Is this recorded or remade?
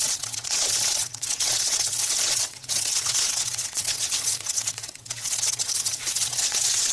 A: remade